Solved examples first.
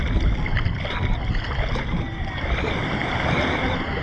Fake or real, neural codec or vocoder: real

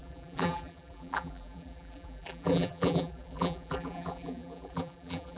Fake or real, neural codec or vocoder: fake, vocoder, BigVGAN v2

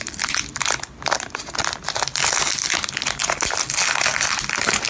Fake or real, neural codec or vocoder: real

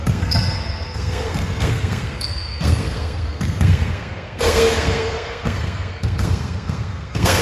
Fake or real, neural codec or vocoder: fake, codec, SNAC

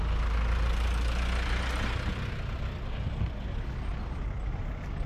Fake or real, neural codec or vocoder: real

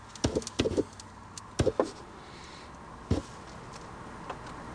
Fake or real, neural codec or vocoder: real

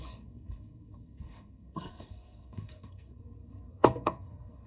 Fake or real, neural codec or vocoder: fake, codec, SNAC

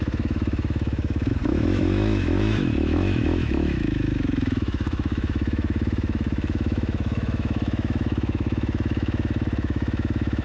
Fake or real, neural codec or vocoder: fake, autoencoder, DAC-VAE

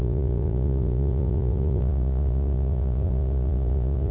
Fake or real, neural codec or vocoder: fake, vocoder, Vocos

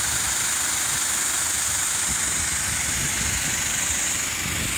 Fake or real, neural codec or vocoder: real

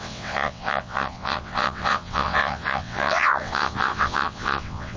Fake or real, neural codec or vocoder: fake, vocoder, WaveNeXt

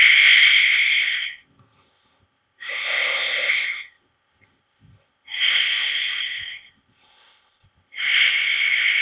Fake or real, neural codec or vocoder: fake, codec, ZipCodec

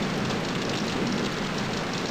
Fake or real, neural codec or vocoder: real